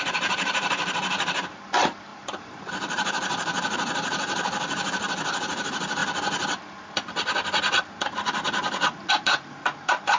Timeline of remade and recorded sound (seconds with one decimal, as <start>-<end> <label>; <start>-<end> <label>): 0.0-6.0 remade; 6.0-9.1 recorded; 9.1-10.2 remade